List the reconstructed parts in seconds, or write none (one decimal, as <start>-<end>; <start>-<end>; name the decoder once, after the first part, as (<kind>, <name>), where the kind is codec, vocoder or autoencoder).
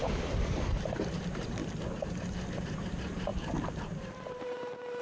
0.0-1.6 (vocoder, BigVGAN v2); 2.5-5.0